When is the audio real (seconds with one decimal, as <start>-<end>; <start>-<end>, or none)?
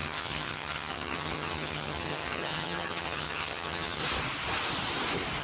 4.0-5.4